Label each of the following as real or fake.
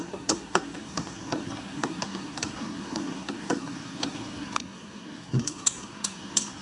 fake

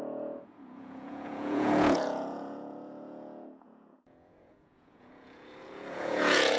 fake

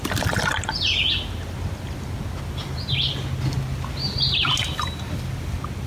real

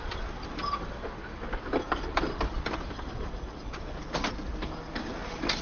real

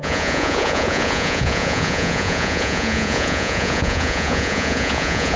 fake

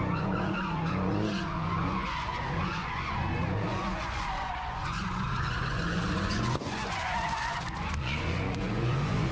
fake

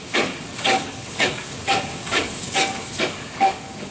fake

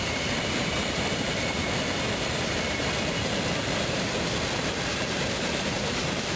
fake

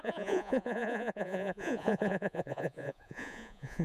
fake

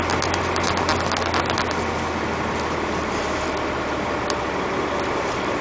real